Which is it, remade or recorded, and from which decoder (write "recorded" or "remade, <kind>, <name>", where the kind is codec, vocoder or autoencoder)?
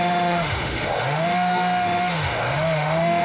remade, autoencoder, DAC-VAE